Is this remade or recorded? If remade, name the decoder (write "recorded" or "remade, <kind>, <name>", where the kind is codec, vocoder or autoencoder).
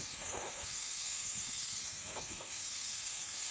remade, codec, SNAC